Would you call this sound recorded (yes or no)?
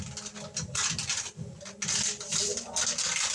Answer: yes